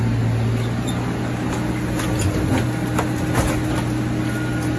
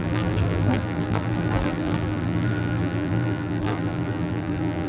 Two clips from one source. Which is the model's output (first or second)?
second